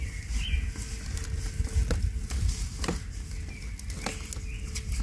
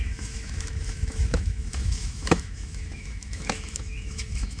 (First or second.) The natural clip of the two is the first